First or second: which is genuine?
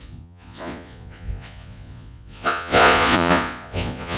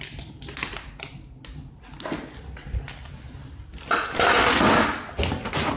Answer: second